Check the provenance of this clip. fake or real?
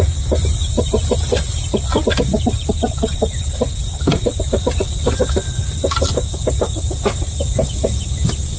real